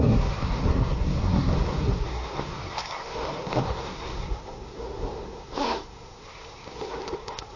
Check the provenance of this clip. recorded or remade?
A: remade